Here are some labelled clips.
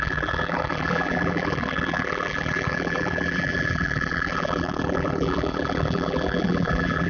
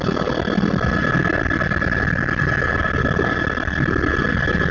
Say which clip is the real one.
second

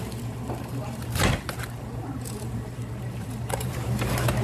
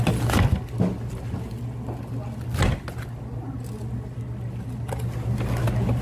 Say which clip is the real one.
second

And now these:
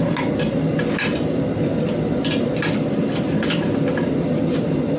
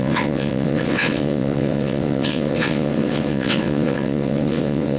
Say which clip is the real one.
first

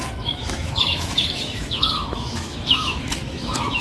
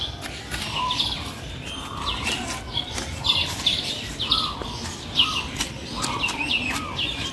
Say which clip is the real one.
second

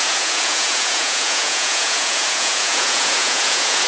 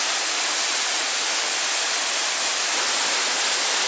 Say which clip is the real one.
second